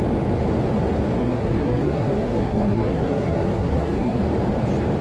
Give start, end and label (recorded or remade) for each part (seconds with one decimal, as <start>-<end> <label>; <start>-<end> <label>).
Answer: 0.0-1.2 recorded; 1.2-4.2 remade; 4.2-5.0 recorded